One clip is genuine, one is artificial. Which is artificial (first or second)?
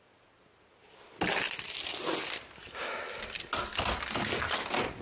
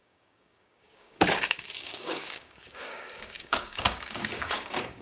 second